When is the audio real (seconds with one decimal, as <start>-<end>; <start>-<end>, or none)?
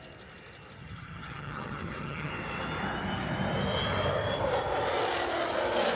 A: 0.0-0.8; 2.3-6.0